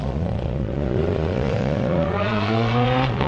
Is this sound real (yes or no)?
no